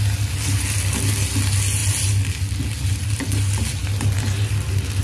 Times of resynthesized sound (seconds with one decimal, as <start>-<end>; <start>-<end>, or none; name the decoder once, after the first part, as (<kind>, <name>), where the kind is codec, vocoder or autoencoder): none